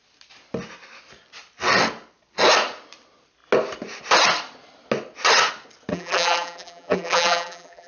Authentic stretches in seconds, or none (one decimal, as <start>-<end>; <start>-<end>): 0.0-5.9